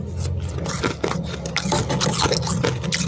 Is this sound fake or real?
real